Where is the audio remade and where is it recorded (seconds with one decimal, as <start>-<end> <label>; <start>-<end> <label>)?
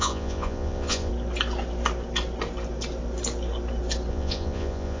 0.0-1.1 remade; 1.1-4.1 recorded; 4.1-5.0 remade